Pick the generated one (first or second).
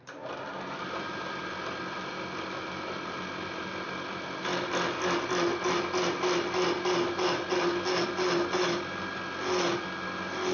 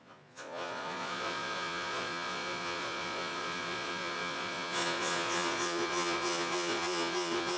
second